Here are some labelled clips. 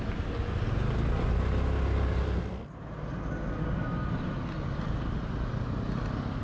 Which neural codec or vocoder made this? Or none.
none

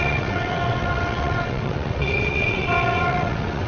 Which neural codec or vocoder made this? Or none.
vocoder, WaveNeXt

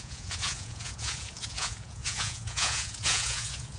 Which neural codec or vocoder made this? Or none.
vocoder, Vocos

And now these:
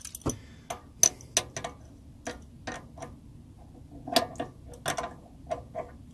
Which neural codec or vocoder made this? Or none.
none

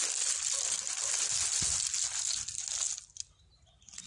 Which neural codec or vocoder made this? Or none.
none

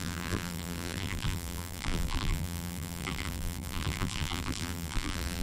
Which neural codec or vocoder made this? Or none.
vocoder, BigVGAN v2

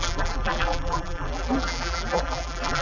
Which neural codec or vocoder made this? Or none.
vocoder, BigVGAN v2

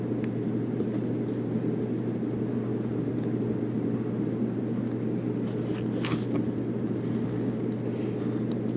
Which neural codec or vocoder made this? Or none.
none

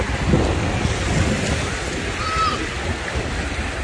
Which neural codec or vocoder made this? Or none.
none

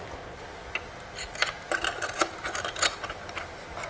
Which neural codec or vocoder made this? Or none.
none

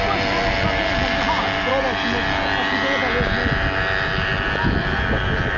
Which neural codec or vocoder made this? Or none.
none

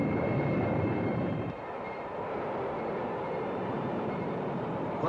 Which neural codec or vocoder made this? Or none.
vocoder, BigVGAN v2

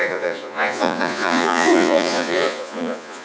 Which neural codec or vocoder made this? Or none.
vocoder, Vocos